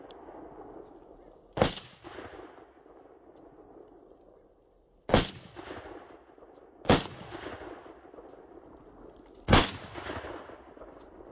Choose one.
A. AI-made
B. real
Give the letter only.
B